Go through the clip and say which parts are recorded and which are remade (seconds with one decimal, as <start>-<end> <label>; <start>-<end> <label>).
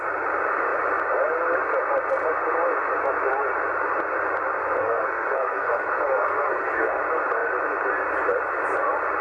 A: 0.0-4.8 recorded; 4.8-7.0 remade; 7.0-9.2 recorded